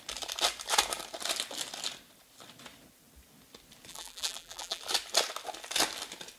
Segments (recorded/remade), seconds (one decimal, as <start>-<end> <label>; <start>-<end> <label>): 0.0-3.9 recorded; 3.9-4.8 remade; 4.8-6.4 recorded